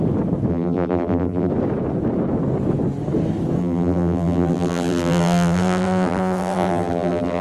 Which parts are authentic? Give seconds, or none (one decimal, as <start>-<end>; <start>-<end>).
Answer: 0.0-0.5; 1.5-3.6